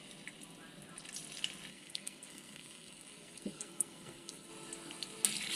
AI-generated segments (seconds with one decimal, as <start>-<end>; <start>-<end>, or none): 1.7-4.5